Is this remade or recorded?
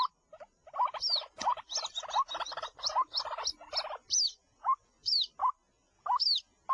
recorded